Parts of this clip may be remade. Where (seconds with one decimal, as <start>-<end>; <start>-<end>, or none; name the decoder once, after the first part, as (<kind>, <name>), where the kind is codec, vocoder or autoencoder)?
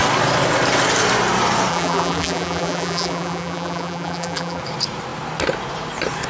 1.7-4.6 (vocoder, BigVGAN v2)